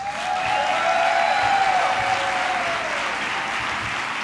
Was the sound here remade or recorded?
recorded